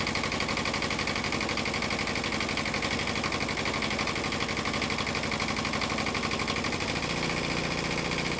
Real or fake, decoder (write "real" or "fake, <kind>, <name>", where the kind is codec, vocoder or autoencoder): real